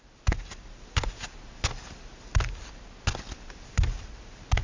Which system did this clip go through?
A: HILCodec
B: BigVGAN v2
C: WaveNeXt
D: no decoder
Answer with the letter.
D